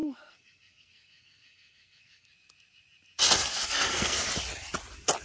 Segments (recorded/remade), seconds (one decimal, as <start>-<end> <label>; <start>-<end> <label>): 0.0-2.3 remade; 2.3-3.5 recorded; 3.5-4.3 remade; 4.3-5.2 recorded